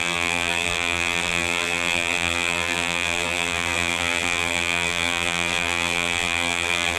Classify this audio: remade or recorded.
remade